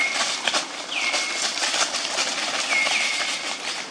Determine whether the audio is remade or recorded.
recorded